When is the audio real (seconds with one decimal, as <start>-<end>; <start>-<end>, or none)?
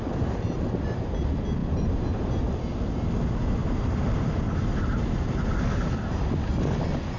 0.0-3.6; 5.0-7.2